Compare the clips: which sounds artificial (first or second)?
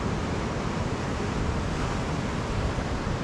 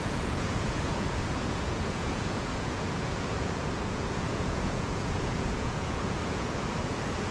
second